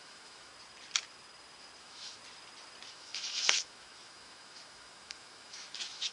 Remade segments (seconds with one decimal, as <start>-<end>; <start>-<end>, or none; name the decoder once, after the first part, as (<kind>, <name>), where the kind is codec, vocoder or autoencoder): 0.0-0.5 (autoencoder, DAC-VAE); 1.8-2.2; 2.9-6.1